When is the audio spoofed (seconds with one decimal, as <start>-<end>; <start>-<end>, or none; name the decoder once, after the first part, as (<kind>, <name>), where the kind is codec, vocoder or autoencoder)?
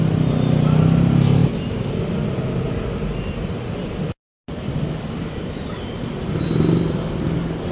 none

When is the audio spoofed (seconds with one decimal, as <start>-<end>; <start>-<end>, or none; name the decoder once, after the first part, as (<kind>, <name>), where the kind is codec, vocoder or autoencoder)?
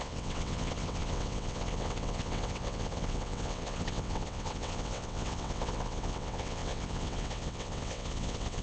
0.0-8.6 (vocoder, WaveNeXt)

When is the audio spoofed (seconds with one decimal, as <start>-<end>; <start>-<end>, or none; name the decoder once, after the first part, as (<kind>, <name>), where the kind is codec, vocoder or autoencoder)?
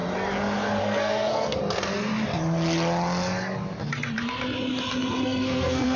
0.8-1.6 (codec, SNAC); 5.2-6.0